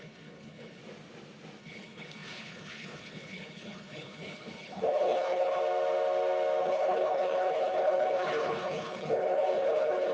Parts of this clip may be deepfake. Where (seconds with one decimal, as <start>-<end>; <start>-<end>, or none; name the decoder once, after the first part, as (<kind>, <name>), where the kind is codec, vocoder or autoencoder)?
0.0-0.8 (codec, HILCodec); 1.6-5.6; 6.6-10.1